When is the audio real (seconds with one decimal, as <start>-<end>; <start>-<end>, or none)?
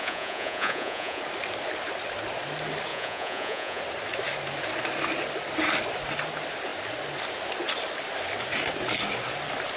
1.2-2.9; 3.8-9.8